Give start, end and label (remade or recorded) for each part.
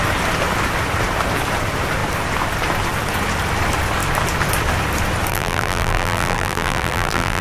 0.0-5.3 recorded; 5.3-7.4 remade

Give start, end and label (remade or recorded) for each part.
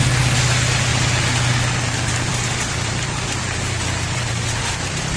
0.0-2.3 recorded; 2.3-5.2 remade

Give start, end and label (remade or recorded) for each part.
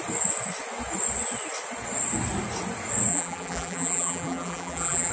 0.0-3.1 recorded; 3.1-5.1 remade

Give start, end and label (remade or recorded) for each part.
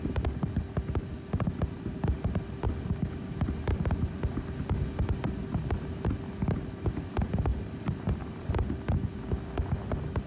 0.0-7.5 recorded; 7.5-8.5 remade; 8.5-10.3 recorded